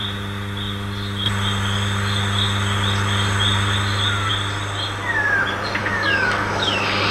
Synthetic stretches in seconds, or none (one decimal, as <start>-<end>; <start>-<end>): 5.8-7.1